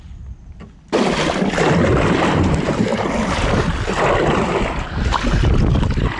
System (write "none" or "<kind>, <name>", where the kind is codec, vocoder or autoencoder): none